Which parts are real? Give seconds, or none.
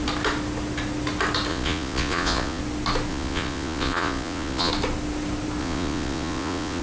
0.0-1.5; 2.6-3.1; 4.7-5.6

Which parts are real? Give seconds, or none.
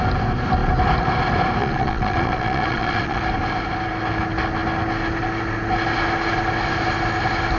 0.0-1.6; 3.2-7.6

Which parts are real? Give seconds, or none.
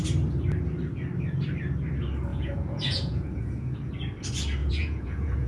0.0-2.3; 3.9-4.6